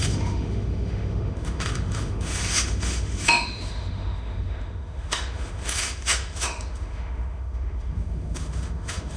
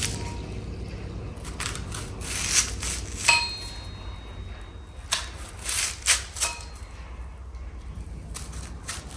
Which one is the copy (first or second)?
first